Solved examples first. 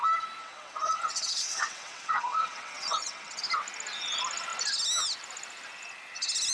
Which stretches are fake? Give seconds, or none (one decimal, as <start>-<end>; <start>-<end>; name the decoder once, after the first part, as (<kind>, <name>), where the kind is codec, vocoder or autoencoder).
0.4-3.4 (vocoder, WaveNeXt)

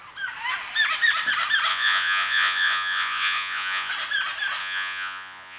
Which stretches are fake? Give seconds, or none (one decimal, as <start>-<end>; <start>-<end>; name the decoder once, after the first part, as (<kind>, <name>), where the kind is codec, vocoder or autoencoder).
1.7-3.9 (vocoder, Vocos); 4.6-5.6

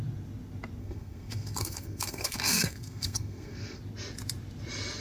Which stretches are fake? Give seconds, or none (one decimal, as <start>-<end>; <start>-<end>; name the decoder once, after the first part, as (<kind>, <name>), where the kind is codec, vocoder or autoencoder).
0.8-3.8 (codec, SNAC)

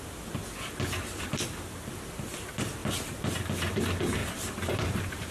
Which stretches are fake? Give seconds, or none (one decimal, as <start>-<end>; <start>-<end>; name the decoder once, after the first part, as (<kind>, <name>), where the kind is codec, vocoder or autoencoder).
4.2-5.3 (vocoder, BigVGAN v2)

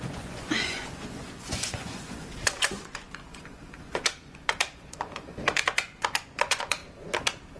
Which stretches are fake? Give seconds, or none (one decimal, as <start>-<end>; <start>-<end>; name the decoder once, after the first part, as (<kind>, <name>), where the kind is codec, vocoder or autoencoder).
0.0-6.8 (vocoder, Vocos)

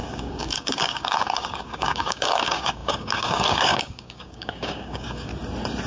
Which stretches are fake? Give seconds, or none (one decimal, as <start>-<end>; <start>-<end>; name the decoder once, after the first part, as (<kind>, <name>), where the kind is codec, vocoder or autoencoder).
0.0-5.3 (codec, DAC)

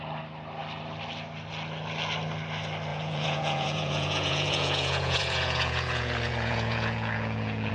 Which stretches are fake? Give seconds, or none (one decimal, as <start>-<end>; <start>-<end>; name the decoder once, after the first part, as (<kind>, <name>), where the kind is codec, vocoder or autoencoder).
2.9-7.7 (vocoder, Vocos)

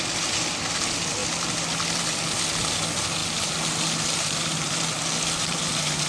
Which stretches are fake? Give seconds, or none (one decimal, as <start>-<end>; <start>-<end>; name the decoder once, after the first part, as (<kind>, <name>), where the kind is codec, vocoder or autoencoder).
1.2-2.0 (vocoder, BigVGAN v2); 3.2-6.1